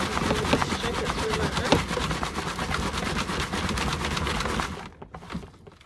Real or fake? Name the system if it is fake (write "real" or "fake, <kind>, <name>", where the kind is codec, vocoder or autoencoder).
real